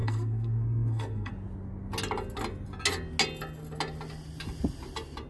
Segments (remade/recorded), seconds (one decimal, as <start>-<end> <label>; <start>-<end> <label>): 0.0-1.3 remade; 1.3-5.3 recorded